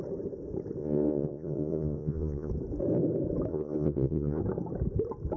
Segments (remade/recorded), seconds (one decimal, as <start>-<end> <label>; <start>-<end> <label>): 0.0-0.8 recorded; 0.8-2.5 remade; 2.5-3.5 recorded; 3.5-4.4 remade; 4.4-5.4 recorded